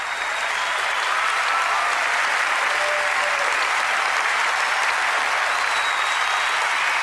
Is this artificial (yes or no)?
no